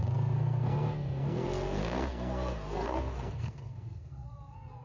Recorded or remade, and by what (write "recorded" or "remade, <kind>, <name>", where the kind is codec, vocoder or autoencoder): remade, codec, SNAC